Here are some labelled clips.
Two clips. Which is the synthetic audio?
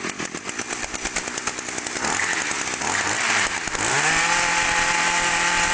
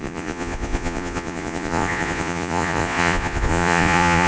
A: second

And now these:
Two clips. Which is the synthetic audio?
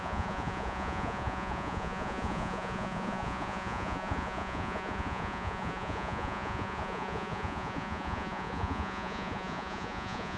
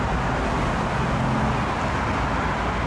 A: first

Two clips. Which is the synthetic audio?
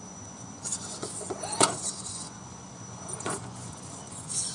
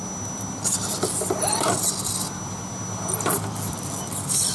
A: first